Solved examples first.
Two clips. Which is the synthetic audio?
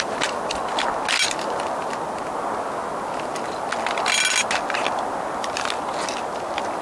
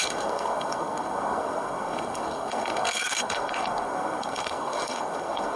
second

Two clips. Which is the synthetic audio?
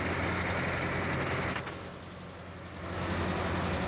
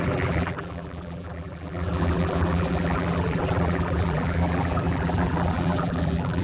second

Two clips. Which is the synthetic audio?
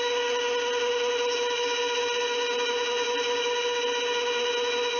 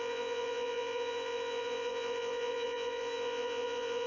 second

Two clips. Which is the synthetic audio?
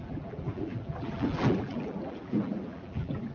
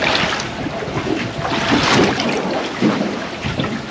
first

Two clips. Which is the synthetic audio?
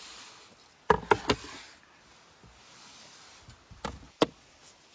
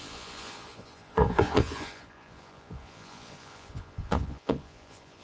second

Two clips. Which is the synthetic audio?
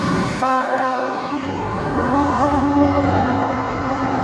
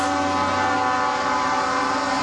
first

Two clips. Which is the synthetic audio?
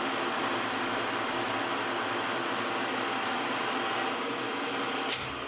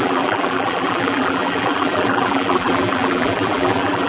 second